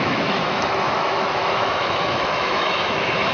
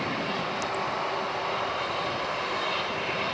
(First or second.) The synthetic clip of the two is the first